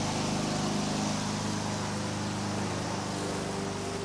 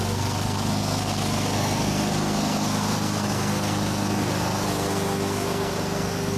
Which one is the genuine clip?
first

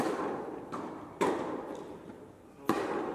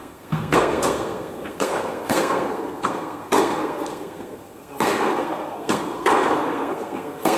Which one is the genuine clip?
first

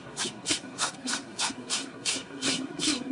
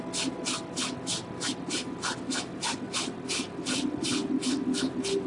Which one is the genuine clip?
second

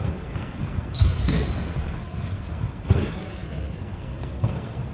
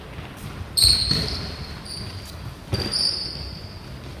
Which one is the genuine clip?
second